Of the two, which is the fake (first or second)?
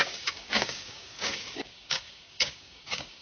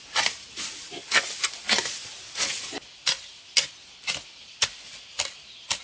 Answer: first